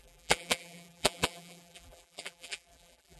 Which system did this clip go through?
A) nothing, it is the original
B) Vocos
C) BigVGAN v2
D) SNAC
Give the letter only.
C